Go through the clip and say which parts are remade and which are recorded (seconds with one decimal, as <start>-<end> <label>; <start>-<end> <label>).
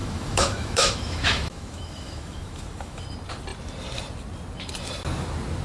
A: 0.0-3.0 remade; 3.0-5.6 recorded